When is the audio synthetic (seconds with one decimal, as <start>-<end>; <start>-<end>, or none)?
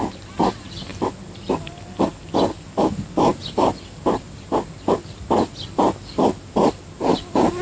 none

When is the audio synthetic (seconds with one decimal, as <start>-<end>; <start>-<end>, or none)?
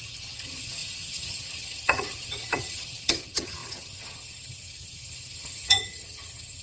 0.0-6.6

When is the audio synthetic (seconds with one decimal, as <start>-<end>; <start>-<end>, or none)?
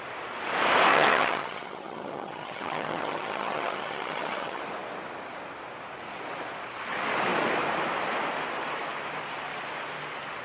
0.9-4.6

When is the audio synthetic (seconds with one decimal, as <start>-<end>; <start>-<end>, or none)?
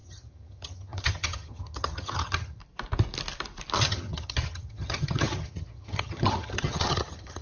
0.0-2.6; 3.8-7.4